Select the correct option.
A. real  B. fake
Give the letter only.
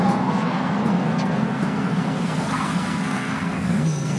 B